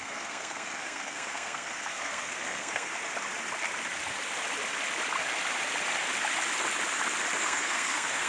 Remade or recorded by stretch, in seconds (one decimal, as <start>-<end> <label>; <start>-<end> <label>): 0.0-2.9 remade; 2.9-7.4 recorded; 7.4-8.3 remade